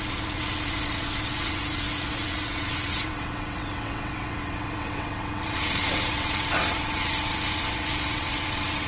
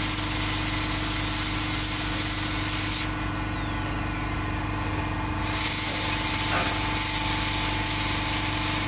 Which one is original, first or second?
second